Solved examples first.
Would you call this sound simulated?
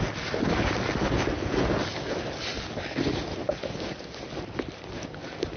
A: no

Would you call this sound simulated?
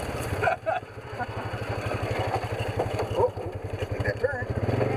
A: no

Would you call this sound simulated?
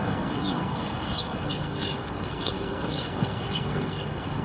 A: yes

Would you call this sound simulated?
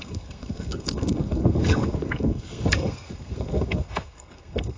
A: yes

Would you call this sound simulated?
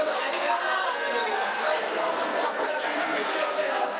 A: yes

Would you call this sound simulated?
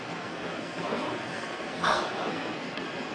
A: yes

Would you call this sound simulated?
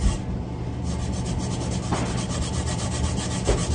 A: no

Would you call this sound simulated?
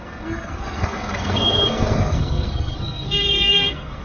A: yes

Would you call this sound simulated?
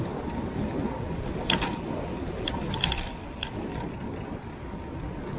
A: no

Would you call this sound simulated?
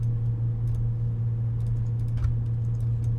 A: no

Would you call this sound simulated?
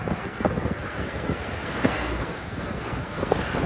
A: yes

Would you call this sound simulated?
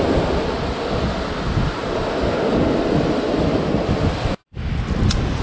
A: no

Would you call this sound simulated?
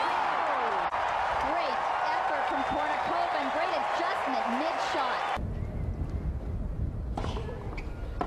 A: no